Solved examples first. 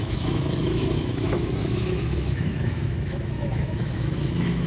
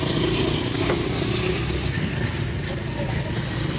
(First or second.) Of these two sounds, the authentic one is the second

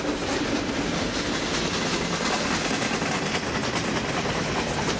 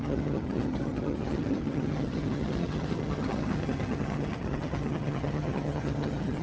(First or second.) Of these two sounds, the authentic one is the first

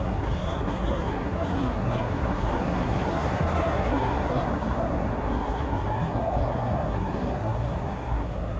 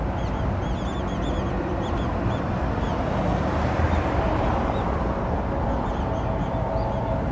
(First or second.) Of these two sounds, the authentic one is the second